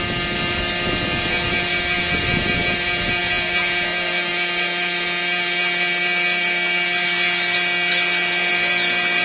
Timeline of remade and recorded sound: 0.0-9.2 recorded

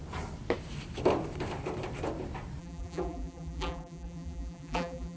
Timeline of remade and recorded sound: 0.0-2.6 recorded; 2.6-5.2 remade

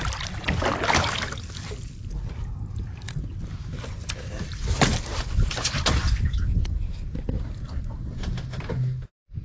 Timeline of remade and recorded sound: 0.0-9.4 recorded

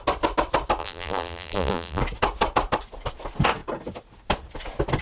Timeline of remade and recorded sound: 0.0-0.8 recorded; 0.8-2.0 remade; 2.0-5.0 recorded

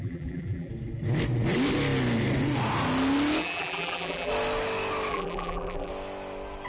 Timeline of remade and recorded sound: 0.0-0.7 remade; 0.7-3.4 recorded; 3.4-4.3 remade; 4.3-5.1 recorded; 5.1-5.9 remade; 5.9-6.7 recorded

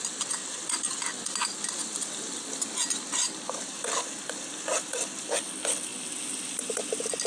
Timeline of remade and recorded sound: 0.0-7.3 recorded